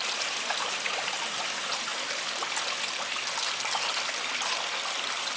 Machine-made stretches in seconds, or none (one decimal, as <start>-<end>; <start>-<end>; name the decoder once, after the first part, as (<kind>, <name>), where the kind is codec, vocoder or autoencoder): 0.0-1.9 (vocoder, BigVGAN v2)